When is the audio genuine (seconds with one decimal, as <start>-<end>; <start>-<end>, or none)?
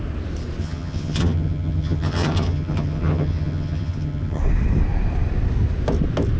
0.0-0.6; 4.4-6.4